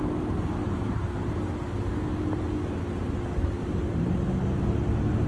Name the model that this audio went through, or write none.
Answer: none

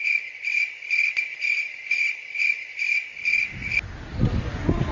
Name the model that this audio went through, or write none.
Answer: none